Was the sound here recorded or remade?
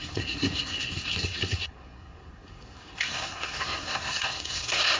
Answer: remade